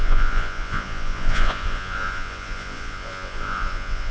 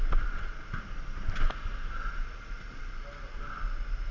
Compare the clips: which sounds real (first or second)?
second